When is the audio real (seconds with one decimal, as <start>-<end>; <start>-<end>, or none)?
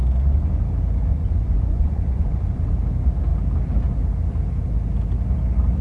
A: 0.0-1.1; 2.7-5.8